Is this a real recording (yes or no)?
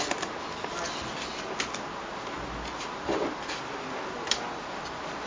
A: yes